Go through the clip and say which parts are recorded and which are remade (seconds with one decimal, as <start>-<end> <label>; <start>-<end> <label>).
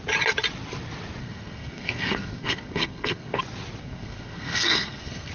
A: 0.0-1.2 recorded; 1.2-3.4 remade; 3.4-3.8 recorded; 3.8-5.3 remade